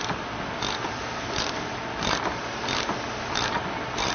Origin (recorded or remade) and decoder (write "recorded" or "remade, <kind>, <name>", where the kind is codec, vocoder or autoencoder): recorded